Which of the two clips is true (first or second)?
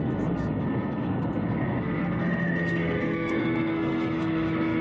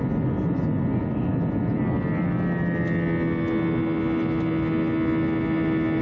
second